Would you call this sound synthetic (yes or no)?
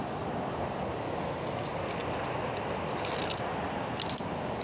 no